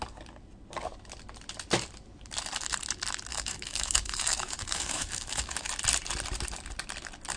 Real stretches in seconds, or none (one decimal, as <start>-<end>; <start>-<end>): 0.0-3.3; 5.7-7.4